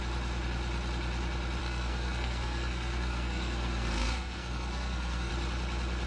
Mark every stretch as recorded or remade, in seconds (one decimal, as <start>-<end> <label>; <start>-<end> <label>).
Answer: 0.0-1.6 recorded; 1.6-5.3 remade; 5.3-6.1 recorded